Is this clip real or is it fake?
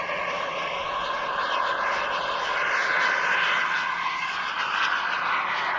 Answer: real